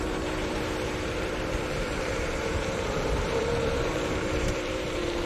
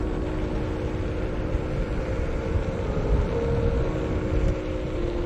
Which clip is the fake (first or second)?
first